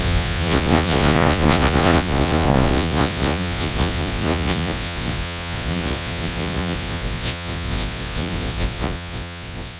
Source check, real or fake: fake